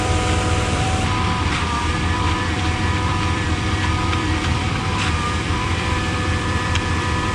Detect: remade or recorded remade